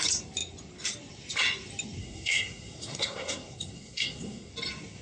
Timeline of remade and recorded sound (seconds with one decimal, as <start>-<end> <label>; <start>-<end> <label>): 0.0-2.0 recorded; 2.0-4.5 remade; 4.5-5.0 recorded